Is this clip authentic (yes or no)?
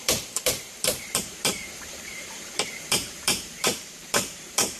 no